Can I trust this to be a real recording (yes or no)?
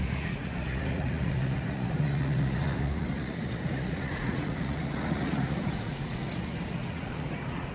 no